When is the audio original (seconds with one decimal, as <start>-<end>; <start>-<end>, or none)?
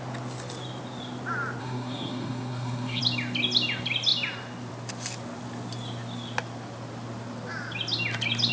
0.0-1.6; 3.0-8.5